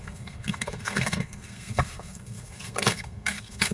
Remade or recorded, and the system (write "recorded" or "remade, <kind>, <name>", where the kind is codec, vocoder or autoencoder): remade, codec, SNAC